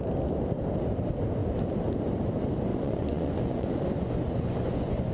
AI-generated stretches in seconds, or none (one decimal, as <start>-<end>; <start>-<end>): 2.7-5.1